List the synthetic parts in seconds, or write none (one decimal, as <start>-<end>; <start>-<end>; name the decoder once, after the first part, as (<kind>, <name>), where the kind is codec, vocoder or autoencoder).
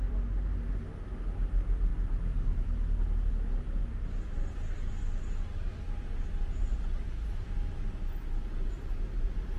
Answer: none